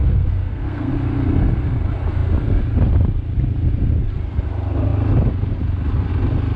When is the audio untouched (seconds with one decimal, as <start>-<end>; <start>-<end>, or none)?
0.9-6.6